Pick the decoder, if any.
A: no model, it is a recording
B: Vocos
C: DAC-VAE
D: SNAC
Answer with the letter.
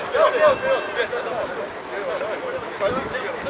A